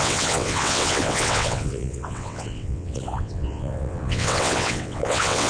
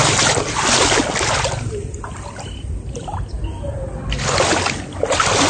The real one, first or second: second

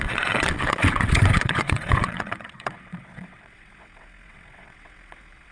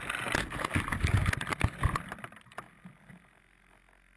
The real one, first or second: second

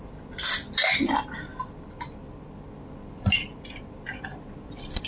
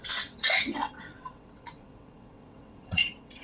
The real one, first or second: first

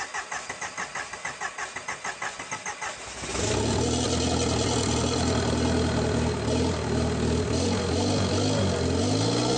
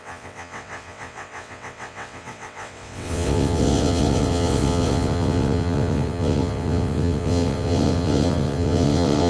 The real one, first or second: first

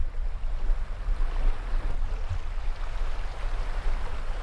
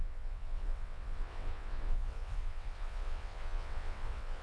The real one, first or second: first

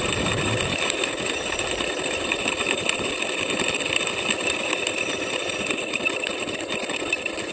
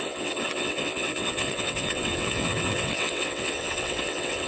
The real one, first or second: first